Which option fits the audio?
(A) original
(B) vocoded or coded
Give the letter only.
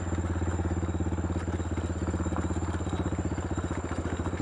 A